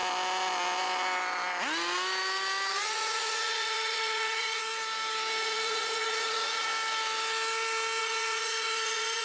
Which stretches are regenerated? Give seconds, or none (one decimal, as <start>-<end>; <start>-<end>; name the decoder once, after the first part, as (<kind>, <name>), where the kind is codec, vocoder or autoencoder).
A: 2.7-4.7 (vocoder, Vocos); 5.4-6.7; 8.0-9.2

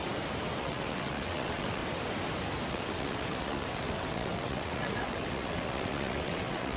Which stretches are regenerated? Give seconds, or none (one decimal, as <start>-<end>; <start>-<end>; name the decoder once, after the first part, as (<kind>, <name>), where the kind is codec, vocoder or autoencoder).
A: 0.6-1.8 (vocoder, WaveNeXt); 2.7-6.8

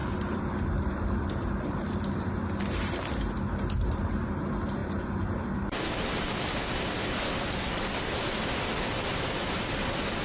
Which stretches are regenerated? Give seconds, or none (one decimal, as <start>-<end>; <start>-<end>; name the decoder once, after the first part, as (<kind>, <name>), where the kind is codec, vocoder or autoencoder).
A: 0.0-2.3 (vocoder, BigVGAN v2); 4.8-9.6